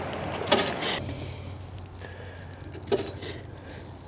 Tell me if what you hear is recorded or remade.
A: recorded